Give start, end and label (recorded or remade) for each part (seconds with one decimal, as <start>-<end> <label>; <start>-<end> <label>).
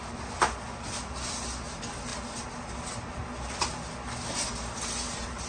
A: 0.0-5.5 recorded